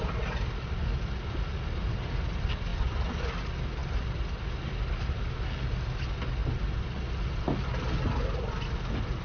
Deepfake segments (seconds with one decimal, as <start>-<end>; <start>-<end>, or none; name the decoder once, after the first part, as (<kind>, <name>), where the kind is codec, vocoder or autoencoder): none